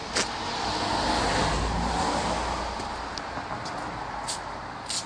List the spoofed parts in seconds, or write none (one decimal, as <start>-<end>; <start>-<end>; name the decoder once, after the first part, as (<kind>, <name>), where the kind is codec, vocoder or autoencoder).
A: none